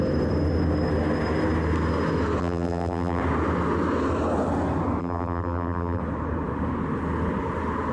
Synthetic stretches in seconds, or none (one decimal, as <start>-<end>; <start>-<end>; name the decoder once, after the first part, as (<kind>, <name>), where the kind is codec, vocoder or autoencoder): 2.4-3.2 (vocoder, BigVGAN v2); 5.0-6.0